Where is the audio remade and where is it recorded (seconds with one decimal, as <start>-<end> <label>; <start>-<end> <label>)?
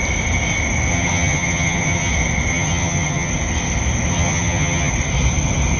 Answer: 0.0-0.9 recorded; 0.9-2.1 remade; 2.1-2.5 recorded; 2.5-3.3 remade; 3.3-4.1 recorded; 4.1-4.9 remade; 4.9-5.8 recorded